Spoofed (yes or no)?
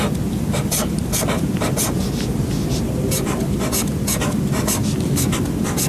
no